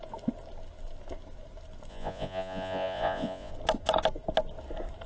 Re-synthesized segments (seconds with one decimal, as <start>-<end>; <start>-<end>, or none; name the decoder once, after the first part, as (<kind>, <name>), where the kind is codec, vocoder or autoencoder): 1.9-3.5 (vocoder, Vocos)